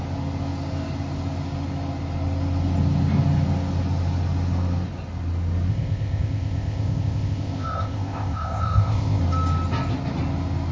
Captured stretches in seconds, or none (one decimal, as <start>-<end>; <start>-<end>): 0.0-5.7; 9.2-10.7